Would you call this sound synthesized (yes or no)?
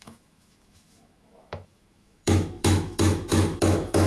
yes